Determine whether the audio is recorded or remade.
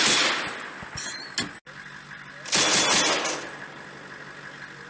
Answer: recorded